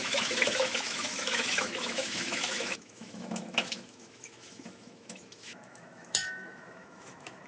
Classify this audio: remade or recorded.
remade